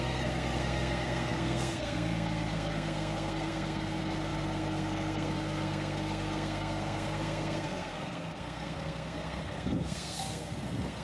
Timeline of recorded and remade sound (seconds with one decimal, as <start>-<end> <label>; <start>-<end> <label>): 0.0-11.0 remade